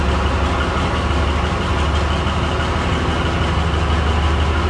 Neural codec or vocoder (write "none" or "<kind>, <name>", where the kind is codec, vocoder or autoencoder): none